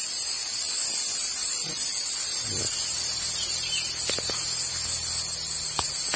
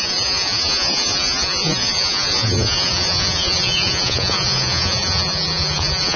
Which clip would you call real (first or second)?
first